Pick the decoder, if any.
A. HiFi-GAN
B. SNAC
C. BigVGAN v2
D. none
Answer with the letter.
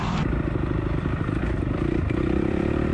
C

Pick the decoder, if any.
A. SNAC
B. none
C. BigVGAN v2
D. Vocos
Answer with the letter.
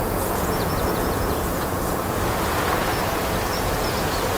D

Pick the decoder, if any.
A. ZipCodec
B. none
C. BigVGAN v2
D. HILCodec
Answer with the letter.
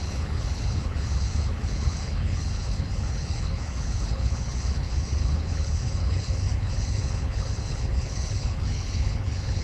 D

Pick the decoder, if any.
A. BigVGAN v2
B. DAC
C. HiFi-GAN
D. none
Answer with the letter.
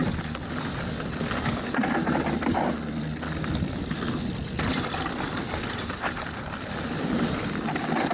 A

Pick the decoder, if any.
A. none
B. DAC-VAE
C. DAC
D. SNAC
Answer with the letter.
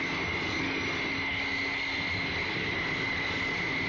A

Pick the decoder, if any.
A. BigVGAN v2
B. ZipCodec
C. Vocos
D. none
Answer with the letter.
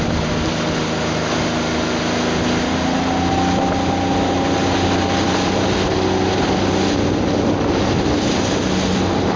D